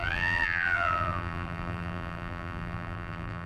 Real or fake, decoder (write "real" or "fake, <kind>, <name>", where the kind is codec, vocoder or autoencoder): fake, vocoder, BigVGAN v2